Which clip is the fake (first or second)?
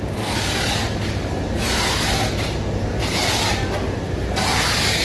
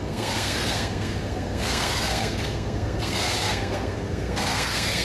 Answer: second